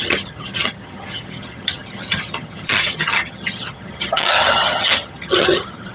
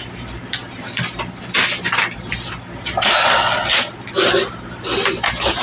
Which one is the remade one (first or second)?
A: first